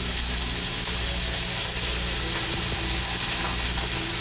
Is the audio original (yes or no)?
yes